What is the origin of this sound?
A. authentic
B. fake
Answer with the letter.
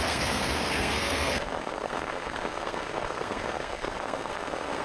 B